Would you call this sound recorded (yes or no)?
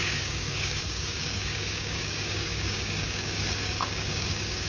no